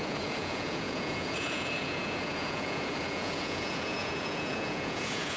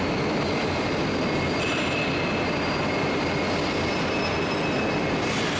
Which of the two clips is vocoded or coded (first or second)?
first